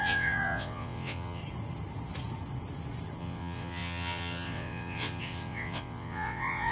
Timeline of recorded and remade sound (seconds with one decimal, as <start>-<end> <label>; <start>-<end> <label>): 0.0-1.4 remade; 1.4-3.2 recorded; 3.2-6.7 remade